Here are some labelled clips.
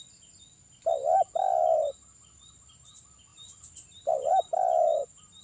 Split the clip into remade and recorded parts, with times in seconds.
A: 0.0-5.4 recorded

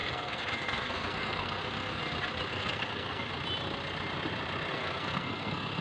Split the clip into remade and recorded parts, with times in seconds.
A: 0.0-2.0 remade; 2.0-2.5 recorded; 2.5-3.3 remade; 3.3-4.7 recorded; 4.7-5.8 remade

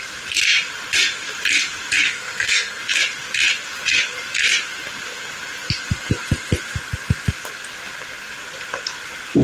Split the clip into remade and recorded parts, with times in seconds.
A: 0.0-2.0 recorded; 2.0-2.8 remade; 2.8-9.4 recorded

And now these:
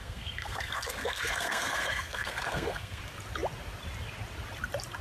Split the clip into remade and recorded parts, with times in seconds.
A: 0.0-3.0 remade; 3.0-5.0 recorded

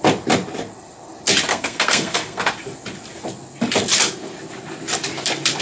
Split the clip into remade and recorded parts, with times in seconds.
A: 0.0-1.5 recorded; 1.5-2.4 remade; 2.4-5.6 recorded

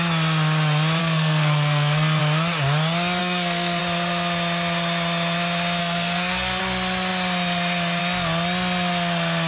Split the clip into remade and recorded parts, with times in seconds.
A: 0.0-1.0 recorded; 1.0-2.2 remade; 2.2-3.2 recorded; 3.2-3.8 remade; 3.8-5.8 recorded; 5.8-6.6 remade; 6.6-9.5 recorded

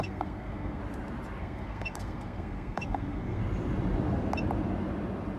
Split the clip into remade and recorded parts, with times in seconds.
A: 0.0-0.8 remade; 0.8-1.4 recorded; 1.4-3.4 remade; 3.4-5.4 recorded

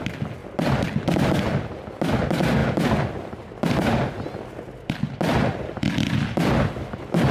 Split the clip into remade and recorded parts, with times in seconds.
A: 0.0-7.3 recorded